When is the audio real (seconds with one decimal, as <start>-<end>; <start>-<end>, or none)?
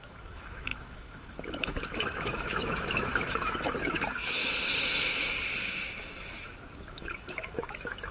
4.4-6.9